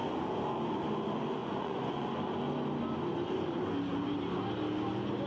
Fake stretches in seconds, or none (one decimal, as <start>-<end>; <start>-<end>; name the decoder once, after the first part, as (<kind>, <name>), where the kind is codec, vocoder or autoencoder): 1.4-2.1 (vocoder, Vocos)